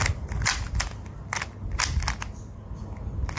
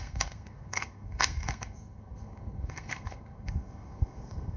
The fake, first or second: second